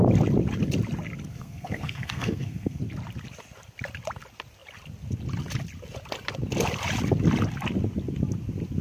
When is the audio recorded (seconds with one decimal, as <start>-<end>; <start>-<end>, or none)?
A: 0.0-1.3; 2.8-8.8